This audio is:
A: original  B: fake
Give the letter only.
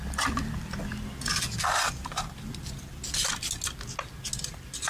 A